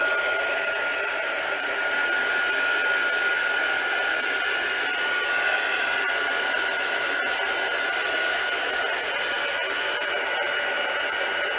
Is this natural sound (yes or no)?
yes